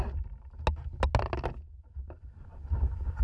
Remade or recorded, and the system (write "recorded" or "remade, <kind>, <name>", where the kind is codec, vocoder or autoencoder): recorded